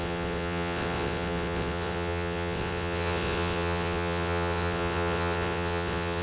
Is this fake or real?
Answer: fake